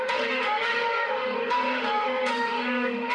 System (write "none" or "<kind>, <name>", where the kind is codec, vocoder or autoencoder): autoencoder, DAC-VAE